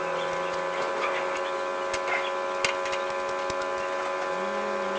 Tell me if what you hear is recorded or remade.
recorded